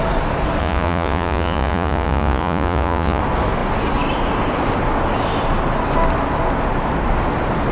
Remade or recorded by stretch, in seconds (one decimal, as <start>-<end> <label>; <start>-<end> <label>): 0.0-0.6 recorded; 0.6-3.2 remade; 3.2-7.7 recorded